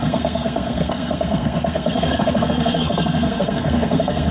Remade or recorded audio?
remade